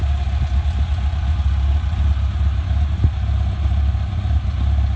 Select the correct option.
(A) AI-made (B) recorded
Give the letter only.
B